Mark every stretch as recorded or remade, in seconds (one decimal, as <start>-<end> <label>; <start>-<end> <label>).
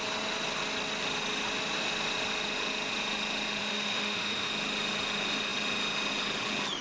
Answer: 0.0-3.6 recorded; 3.6-4.5 remade; 4.5-6.8 recorded